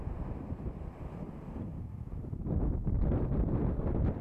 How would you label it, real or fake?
real